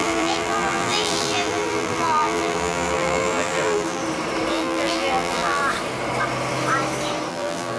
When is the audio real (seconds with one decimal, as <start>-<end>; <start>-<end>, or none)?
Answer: 4.0-4.5; 5.6-7.3